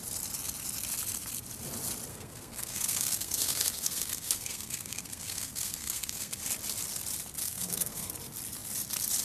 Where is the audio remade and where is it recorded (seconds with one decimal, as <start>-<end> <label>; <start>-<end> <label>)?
0.0-2.1 recorded; 2.1-6.4 remade; 6.4-7.4 recorded; 7.4-8.1 remade; 8.1-9.2 recorded